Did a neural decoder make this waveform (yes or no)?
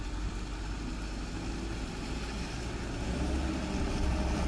no